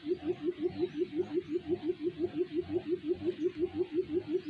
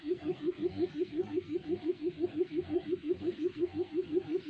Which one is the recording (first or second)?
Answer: first